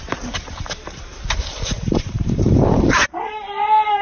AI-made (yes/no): yes